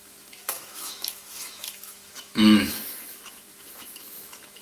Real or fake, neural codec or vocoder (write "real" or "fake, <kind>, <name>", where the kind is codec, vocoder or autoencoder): fake, autoencoder, DAC-VAE